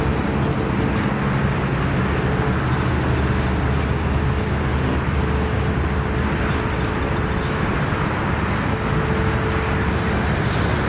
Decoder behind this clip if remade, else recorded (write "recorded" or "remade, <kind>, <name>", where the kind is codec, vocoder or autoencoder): recorded